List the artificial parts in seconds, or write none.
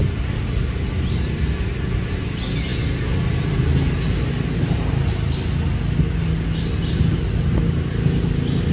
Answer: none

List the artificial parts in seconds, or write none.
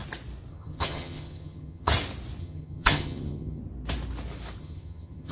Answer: 0.5-1.9 (vocoder, HiFi-GAN); 2.4-3.6; 4.6-5.3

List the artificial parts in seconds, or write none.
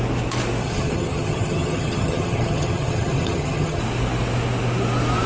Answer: 0.6-3.8 (vocoder, HiFi-GAN)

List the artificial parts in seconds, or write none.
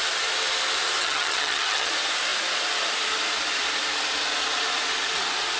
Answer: 1.0-1.9 (vocoder, HiFi-GAN)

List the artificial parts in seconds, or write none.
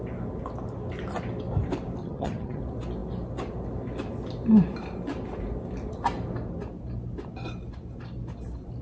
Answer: 2.0-2.6 (vocoder, HiFi-GAN)